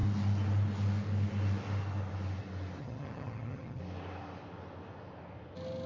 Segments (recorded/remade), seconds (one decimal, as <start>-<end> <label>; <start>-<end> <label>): 0.0-2.8 recorded; 2.8-3.8 remade; 3.8-5.9 recorded